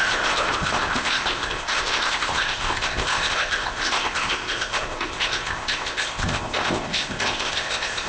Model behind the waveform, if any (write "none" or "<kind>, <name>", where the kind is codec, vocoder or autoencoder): codec, ZipCodec